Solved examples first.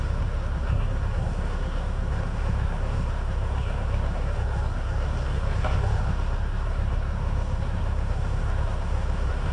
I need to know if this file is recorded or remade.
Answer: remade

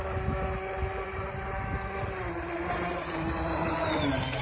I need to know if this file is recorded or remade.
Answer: recorded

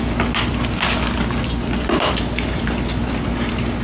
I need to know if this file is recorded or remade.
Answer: recorded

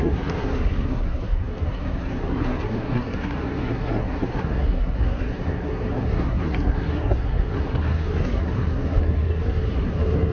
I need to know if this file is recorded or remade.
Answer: remade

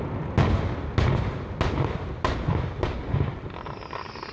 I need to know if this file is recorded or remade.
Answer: recorded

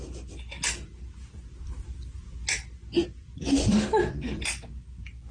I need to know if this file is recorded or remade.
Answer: recorded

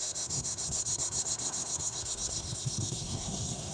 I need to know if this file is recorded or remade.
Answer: remade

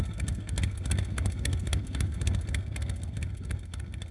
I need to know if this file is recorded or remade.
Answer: remade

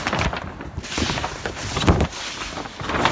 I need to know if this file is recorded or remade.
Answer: recorded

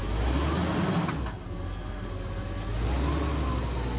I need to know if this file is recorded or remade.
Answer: recorded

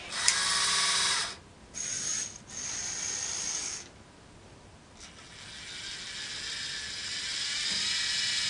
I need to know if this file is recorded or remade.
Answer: recorded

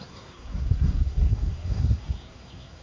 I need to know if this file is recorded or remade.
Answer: remade